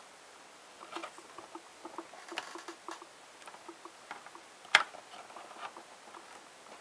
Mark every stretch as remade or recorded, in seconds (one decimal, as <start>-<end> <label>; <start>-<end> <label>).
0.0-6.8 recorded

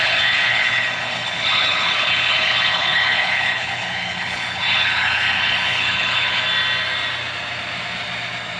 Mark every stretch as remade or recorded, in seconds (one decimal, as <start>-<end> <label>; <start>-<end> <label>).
0.0-6.4 remade; 6.4-8.6 recorded

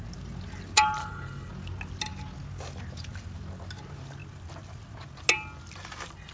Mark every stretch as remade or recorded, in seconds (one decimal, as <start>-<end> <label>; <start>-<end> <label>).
0.0-1.0 recorded; 1.0-1.5 remade; 1.5-6.3 recorded

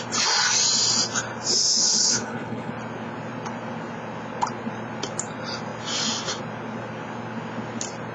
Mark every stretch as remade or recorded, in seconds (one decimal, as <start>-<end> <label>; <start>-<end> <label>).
0.0-1.8 recorded; 1.8-2.7 remade; 2.7-8.1 recorded

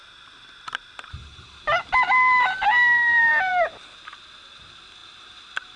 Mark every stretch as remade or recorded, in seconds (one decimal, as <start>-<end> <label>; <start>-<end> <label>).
0.0-5.8 recorded